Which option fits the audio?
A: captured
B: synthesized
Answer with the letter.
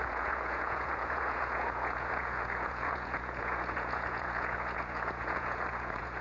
B